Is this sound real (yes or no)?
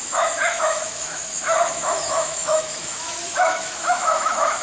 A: no